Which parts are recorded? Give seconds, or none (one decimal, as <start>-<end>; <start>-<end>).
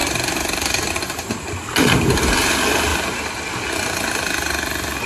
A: 0.0-5.1